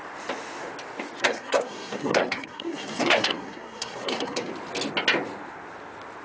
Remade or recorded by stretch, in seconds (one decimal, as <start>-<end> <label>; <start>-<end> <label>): 0.0-1.2 recorded; 1.2-4.5 remade; 4.5-6.2 recorded